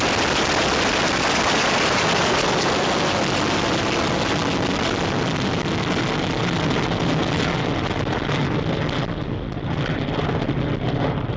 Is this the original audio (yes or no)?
yes